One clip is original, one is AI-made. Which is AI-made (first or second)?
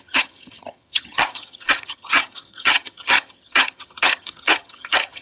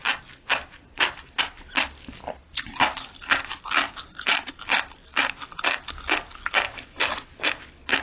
first